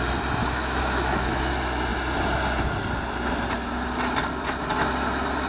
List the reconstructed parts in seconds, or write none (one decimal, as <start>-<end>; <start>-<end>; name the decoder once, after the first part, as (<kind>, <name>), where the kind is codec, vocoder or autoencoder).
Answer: 0.4-1.5 (autoencoder, DAC-VAE)